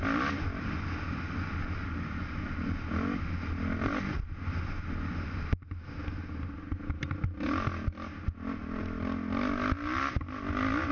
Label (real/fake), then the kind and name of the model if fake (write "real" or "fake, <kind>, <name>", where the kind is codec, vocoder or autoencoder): real